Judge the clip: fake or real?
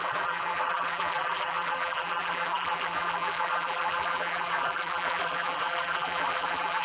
fake